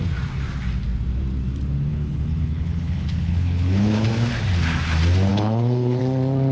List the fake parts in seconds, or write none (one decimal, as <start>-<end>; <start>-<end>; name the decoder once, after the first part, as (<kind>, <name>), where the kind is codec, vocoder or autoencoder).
1.9-4.1 (codec, HILCodec); 5.3-6.0